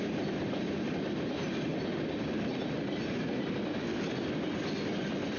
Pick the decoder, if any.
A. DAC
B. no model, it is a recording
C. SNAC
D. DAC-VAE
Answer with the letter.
B